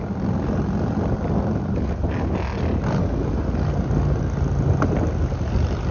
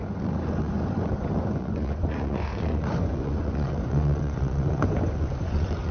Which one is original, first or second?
first